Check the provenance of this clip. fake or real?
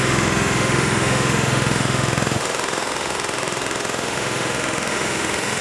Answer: fake